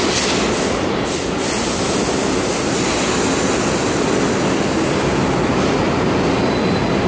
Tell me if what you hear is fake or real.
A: real